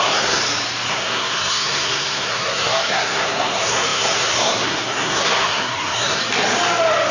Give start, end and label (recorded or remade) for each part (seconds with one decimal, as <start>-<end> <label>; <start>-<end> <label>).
0.0-0.4 remade; 0.4-0.9 recorded; 0.9-6.2 remade; 6.2-7.1 recorded